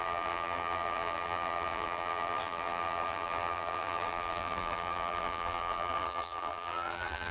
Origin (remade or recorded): remade